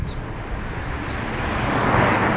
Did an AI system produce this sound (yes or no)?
no